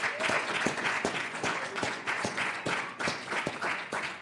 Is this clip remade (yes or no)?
yes